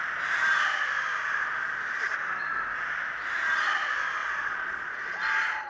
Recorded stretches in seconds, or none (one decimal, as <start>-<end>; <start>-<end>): 0.0-4.2